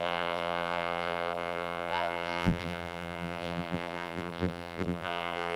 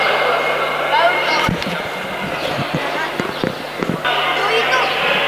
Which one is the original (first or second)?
second